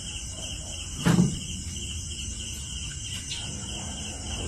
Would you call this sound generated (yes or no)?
yes